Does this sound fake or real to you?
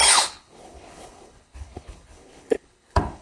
fake